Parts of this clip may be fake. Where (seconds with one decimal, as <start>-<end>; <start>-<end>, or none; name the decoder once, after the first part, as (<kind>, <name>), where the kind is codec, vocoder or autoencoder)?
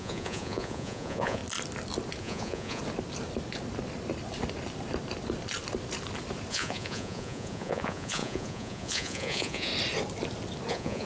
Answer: 0.0-1.4 (vocoder, Vocos); 2.2-2.8; 6.5-9.7; 10.7-11.1